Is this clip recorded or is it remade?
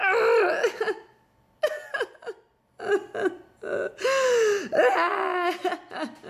recorded